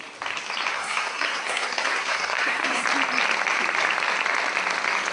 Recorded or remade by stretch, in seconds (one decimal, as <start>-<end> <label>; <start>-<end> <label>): 0.0-0.7 recorded; 0.7-2.8 remade; 2.8-5.1 recorded